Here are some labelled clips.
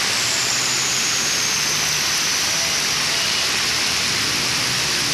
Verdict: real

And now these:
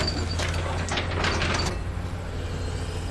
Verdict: real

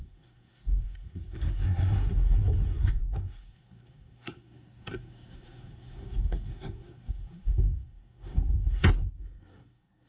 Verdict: fake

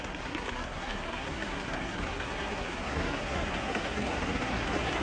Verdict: fake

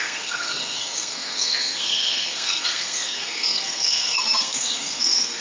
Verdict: fake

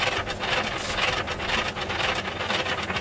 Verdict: real